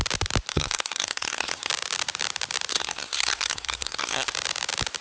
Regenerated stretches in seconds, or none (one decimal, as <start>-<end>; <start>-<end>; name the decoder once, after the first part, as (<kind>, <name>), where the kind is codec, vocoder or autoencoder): 0.5-1.7 (codec, SNAC); 2.7-4.3